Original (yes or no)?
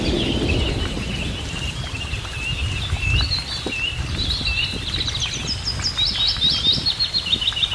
yes